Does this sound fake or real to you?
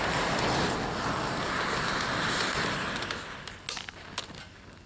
real